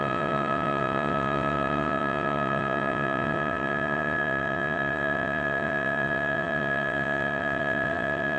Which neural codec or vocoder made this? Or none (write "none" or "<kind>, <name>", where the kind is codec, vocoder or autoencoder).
vocoder, WaveNeXt